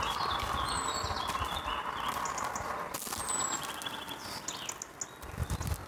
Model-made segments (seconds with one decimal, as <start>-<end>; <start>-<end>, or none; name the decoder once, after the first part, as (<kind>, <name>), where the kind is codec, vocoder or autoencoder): none